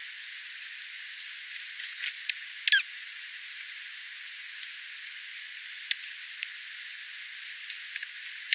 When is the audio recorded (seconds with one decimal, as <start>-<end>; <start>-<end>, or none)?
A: 0.0-8.5

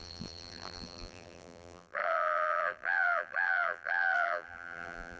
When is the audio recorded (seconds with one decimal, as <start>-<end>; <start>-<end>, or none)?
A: none

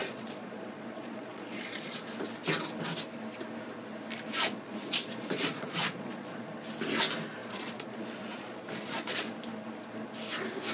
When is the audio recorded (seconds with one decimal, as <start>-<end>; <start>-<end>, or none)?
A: 2.0-4.4; 6.5-7.4; 9.3-10.7

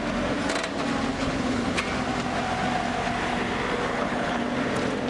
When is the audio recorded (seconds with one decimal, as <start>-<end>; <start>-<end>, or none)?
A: 0.0-1.1; 1.8-3.9; 4.4-5.1

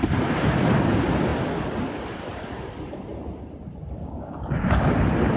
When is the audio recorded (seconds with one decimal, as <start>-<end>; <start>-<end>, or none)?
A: 0.0-4.0; 4.9-5.4